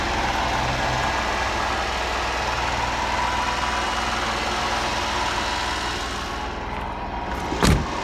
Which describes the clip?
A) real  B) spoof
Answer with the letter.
A